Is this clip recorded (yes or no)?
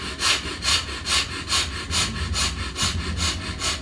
yes